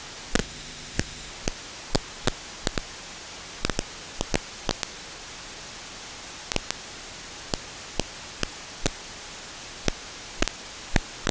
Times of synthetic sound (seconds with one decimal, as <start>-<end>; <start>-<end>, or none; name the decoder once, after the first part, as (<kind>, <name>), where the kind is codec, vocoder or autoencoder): 0.4-1.3 (autoencoder, DAC-VAE)